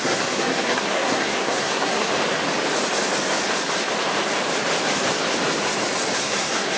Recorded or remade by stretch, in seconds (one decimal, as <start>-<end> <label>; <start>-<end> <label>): 0.0-2.1 remade; 2.1-6.2 recorded; 6.2-6.8 remade